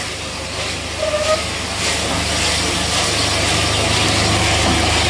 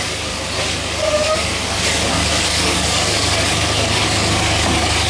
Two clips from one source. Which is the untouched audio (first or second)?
first